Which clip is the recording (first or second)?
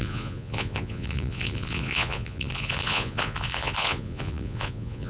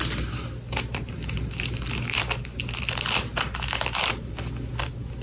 second